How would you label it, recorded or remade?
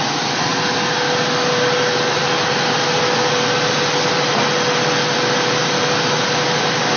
recorded